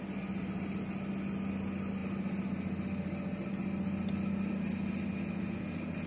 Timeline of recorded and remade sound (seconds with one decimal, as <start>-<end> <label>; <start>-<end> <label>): 0.0-6.1 recorded